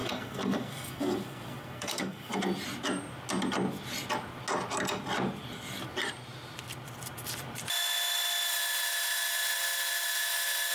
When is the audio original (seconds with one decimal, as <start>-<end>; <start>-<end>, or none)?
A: 2.4-10.7

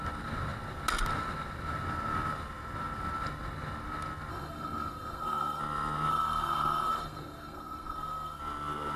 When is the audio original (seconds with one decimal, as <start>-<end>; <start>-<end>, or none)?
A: 0.0-4.3; 5.6-6.1; 8.4-9.0

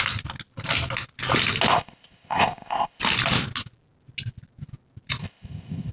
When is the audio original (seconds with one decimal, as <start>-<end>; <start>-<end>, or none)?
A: 0.0-1.7; 3.0-5.2

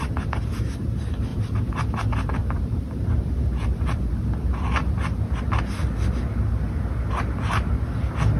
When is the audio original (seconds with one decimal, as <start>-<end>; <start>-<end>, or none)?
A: 0.0-1.3; 1.8-2.4; 4.0-8.4

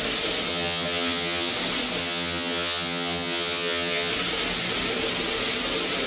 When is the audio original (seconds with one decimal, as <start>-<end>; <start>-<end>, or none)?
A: 0.0-0.5; 1.5-2.0; 4.1-6.1

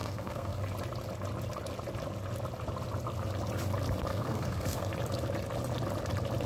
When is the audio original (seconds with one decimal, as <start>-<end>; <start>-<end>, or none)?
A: 0.6-4.1; 4.9-6.5

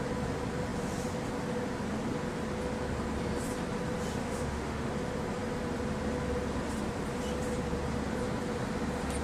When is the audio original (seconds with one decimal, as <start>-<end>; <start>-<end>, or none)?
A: 0.0-4.2; 4.9-9.2